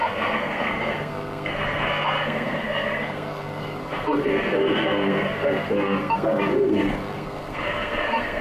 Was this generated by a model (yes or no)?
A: yes